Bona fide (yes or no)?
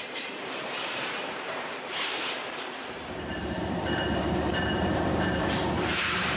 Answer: no